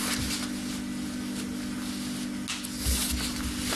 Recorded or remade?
recorded